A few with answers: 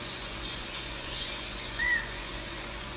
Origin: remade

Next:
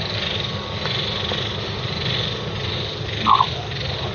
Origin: recorded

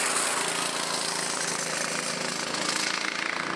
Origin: recorded